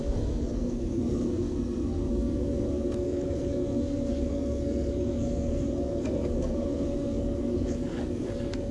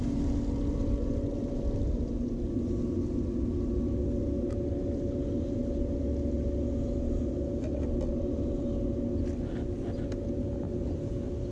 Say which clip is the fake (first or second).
first